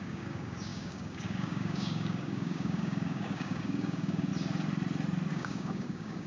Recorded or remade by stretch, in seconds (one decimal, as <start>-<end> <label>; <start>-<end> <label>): 0.0-4.3 remade; 4.3-5.3 recorded; 5.3-6.3 remade